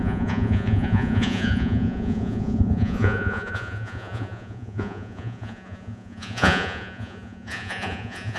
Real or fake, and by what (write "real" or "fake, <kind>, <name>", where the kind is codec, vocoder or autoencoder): fake, vocoder, Vocos